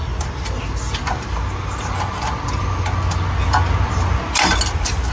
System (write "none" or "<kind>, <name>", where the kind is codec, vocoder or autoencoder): none